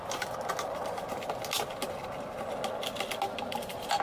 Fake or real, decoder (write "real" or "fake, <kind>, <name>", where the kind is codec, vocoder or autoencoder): real